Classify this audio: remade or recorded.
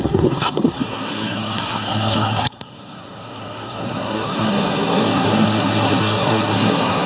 remade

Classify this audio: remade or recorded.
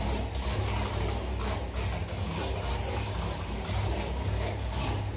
recorded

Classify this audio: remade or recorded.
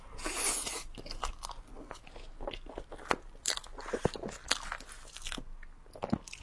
recorded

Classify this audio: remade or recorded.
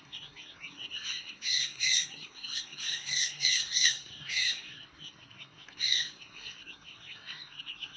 remade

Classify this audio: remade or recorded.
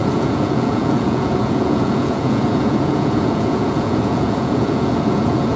remade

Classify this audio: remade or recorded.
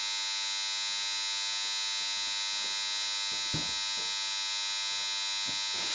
recorded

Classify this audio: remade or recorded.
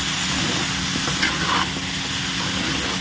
recorded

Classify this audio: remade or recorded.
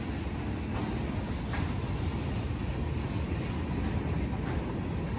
recorded